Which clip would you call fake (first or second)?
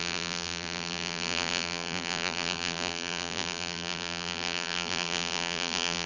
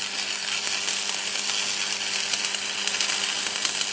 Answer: first